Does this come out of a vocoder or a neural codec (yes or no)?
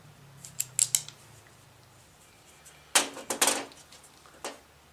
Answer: no